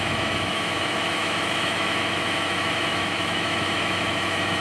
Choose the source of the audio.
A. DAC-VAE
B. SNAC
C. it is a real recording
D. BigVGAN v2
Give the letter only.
A